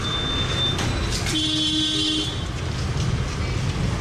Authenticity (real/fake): real